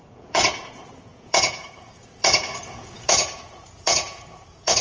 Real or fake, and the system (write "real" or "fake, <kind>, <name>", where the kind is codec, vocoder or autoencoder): fake, vocoder, Vocos